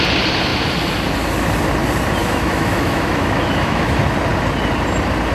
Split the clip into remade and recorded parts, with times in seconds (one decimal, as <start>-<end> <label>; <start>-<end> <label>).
0.0-2.2 recorded; 2.2-4.0 remade; 4.0-5.3 recorded